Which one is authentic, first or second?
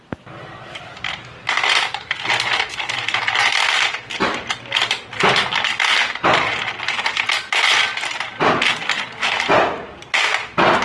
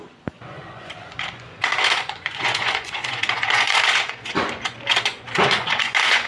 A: first